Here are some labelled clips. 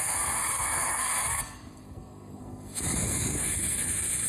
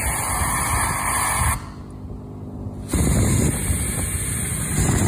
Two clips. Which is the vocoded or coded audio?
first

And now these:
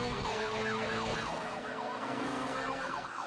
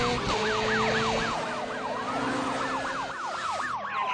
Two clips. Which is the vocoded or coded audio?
first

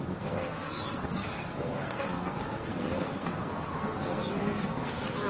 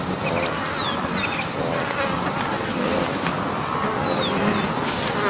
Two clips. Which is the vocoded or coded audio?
first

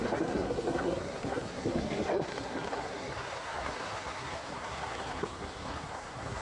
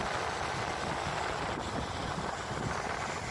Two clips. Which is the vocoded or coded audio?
first